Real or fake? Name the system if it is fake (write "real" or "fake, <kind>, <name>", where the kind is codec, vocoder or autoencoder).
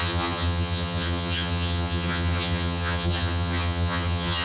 fake, vocoder, HiFi-GAN